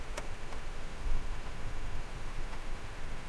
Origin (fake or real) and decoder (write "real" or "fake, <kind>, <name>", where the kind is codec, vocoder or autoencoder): fake, autoencoder, DAC-VAE